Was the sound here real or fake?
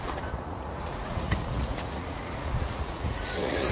fake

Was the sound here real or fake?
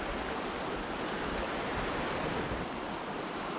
real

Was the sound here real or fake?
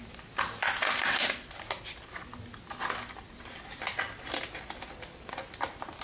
real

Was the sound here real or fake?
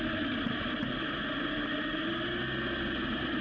real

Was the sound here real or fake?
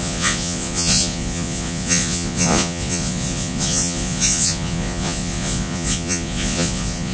fake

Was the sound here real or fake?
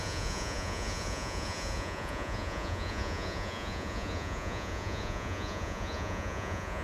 fake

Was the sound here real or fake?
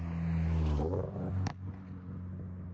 real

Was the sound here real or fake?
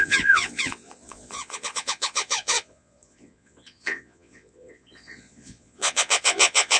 fake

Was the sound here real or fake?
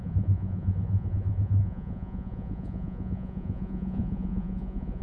fake